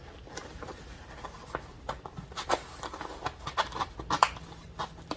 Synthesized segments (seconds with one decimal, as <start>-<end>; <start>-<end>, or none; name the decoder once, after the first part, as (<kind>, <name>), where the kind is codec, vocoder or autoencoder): none